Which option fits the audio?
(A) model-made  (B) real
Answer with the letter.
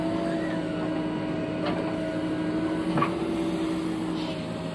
B